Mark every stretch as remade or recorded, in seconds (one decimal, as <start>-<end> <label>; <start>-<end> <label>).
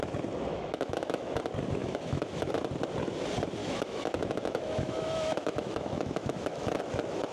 0.0-0.5 recorded; 0.5-1.4 remade; 1.4-1.8 recorded; 1.8-2.5 remade; 2.5-3.6 recorded; 3.6-6.8 remade; 6.8-7.3 recorded